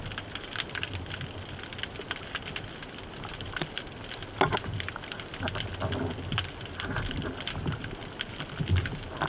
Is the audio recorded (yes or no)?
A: yes